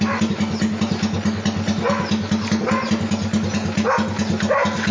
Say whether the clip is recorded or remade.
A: recorded